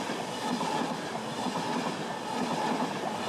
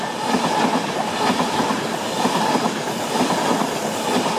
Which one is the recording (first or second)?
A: first